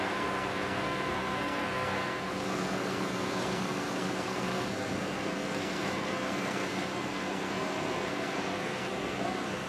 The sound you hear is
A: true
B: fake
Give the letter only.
B